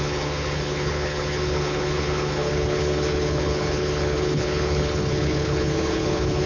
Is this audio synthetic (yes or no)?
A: yes